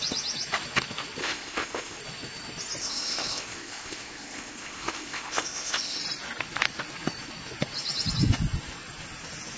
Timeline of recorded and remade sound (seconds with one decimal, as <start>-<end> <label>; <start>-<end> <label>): 0.0-1.2 recorded; 1.2-2.0 remade; 2.0-2.8 recorded; 2.8-6.0 remade; 6.0-9.6 recorded